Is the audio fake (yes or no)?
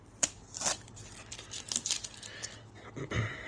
no